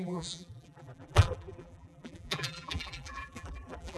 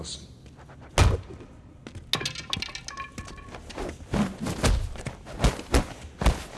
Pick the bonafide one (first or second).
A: second